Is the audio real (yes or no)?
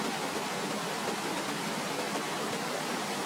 yes